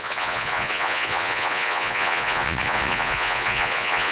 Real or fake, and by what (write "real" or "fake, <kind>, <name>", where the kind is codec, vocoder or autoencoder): fake, vocoder, Vocos